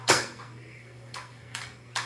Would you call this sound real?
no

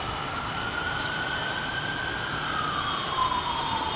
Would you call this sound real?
yes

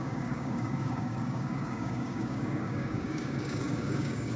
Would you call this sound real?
no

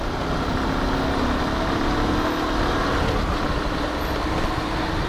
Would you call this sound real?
yes